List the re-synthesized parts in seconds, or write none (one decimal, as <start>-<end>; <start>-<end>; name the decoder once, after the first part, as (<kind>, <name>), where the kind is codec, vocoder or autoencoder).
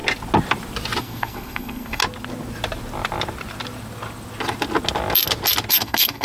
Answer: 1.0-2.0 (codec, SNAC); 5.7-6.2